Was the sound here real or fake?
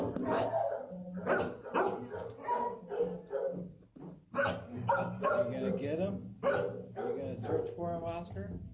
real